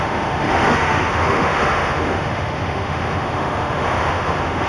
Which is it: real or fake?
fake